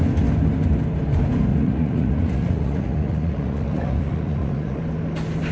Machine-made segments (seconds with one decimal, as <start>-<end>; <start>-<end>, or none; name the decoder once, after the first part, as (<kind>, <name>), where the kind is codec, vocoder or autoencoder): 1.5-4.8 (vocoder, Vocos)